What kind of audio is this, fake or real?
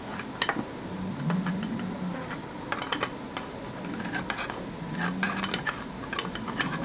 real